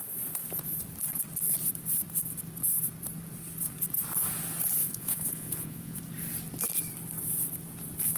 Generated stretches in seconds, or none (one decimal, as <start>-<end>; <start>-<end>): 4.8-6.0